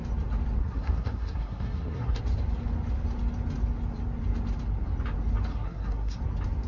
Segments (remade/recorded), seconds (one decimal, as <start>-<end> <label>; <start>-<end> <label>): 0.0-0.6 recorded; 0.6-2.2 remade; 2.2-5.5 recorded; 5.5-6.2 remade; 6.2-6.7 recorded